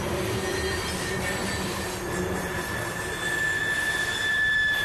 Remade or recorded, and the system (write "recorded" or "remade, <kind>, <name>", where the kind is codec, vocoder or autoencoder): recorded